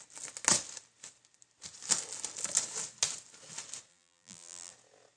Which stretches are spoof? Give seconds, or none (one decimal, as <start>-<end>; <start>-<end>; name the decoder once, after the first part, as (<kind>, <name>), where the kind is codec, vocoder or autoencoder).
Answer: 3.9-4.7 (vocoder, BigVGAN v2)